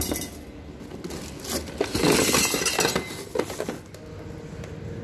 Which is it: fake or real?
real